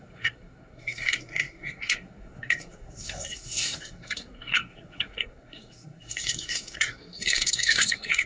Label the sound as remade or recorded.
remade